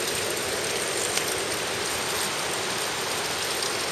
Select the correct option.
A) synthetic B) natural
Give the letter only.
B